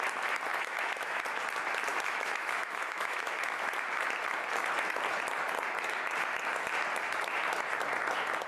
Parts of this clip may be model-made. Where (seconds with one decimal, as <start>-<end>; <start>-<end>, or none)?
0.5-1.2; 1.9-3.4

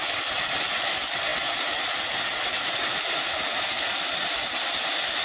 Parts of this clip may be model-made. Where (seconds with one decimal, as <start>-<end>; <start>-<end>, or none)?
none

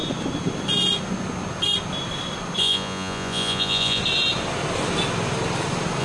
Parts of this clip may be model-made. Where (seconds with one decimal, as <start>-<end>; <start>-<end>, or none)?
2.6-4.0

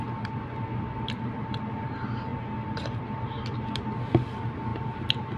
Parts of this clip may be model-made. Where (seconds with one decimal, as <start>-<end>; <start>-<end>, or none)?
4.7-5.4

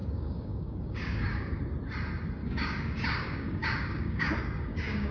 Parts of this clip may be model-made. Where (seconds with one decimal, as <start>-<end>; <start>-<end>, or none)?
0.0-1.6; 2.4-5.1

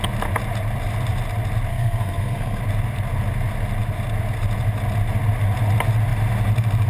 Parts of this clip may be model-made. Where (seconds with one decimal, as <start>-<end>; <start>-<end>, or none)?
1.7-2.6

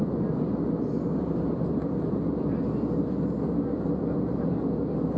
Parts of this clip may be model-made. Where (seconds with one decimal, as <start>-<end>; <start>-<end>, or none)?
none